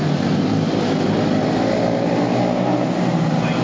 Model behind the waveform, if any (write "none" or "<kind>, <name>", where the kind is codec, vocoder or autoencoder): none